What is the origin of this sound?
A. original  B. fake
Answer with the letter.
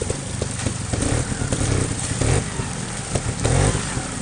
B